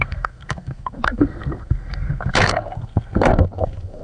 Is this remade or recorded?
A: remade